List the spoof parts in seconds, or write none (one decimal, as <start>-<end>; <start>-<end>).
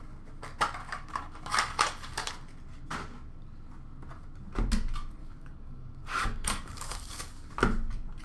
0.8-2.3; 5.2-7.5